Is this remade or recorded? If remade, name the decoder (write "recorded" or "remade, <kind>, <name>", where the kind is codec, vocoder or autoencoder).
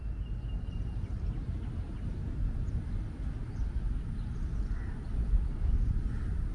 recorded